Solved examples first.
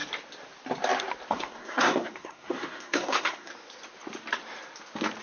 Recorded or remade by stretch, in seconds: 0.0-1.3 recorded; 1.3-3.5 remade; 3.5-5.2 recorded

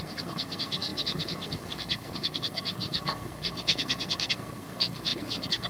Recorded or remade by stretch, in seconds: 0.0-5.7 remade

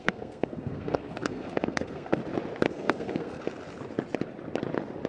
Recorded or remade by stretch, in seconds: 0.0-2.2 remade; 2.2-2.7 recorded; 2.7-3.4 remade; 3.4-5.1 recorded

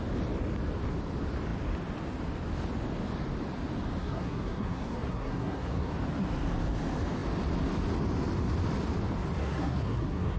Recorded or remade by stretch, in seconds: 0.0-4.0 recorded; 4.0-5.9 remade; 5.9-9.4 recorded; 9.4-10.4 remade

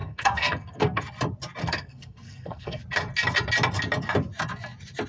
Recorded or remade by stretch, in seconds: 0.0-1.0 remade; 1.0-1.6 recorded; 1.6-2.8 remade; 2.8-5.1 recorded

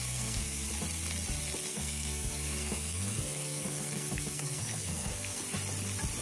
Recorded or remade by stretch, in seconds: 0.0-0.7 remade; 0.7-1.7 recorded; 1.7-5.4 remade; 5.4-6.2 recorded

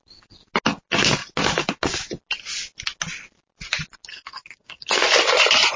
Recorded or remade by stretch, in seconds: 0.0-4.1 recorded; 4.1-5.0 remade; 5.0-5.8 recorded

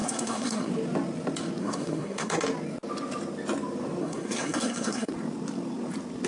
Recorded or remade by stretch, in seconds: 0.0-0.7 remade; 0.7-1.6 recorded; 1.6-2.4 remade; 2.4-4.0 recorded; 4.0-5.1 remade; 5.1-6.3 recorded